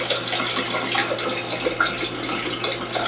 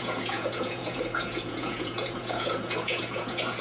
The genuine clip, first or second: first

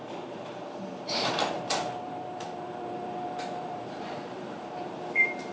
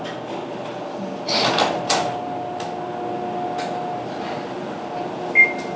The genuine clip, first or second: second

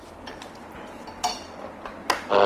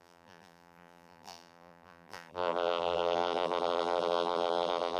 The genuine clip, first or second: first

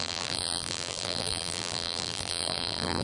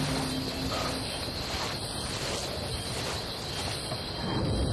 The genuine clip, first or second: second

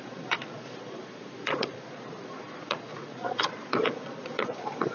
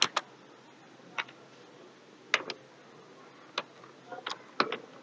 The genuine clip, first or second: second